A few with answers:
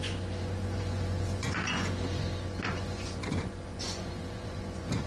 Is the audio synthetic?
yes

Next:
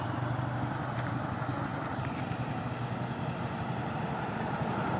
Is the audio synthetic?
no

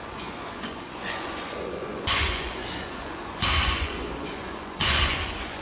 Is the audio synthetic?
yes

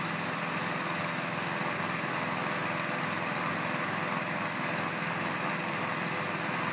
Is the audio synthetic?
no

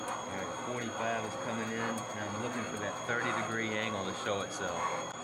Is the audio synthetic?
no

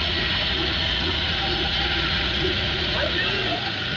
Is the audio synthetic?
yes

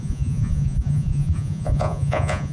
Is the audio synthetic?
yes